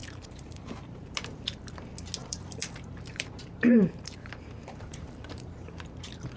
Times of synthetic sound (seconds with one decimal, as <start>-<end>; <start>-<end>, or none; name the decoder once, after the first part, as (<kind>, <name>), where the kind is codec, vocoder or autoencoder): 0.0-1.3 (vocoder, BigVGAN v2); 2.2-6.0